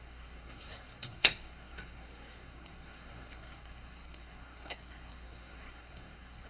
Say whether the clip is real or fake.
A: fake